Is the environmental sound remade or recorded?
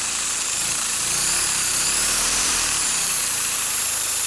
remade